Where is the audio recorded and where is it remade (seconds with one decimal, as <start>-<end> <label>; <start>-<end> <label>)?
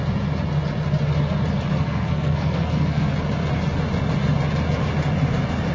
0.0-1.7 recorded; 1.7-3.1 remade; 3.1-5.7 recorded